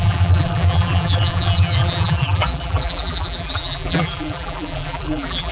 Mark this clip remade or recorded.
remade